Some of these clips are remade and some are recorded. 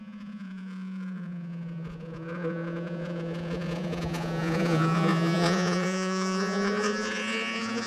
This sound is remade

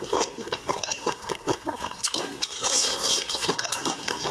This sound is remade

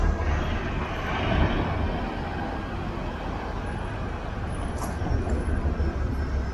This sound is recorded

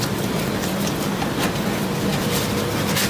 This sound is recorded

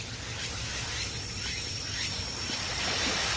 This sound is recorded